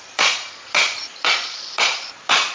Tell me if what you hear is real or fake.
fake